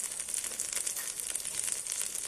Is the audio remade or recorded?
recorded